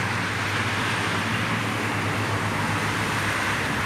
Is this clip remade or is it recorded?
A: recorded